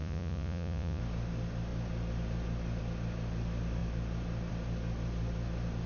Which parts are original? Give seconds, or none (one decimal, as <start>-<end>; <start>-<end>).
1.0-5.9